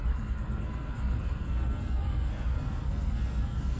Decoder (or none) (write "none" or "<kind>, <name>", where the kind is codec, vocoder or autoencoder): codec, SNAC